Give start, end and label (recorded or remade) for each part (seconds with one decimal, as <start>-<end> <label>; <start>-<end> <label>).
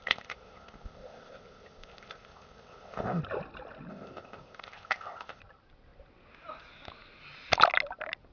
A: 0.0-3.2 remade; 3.2-3.9 recorded; 3.9-5.4 remade; 5.4-8.3 recorded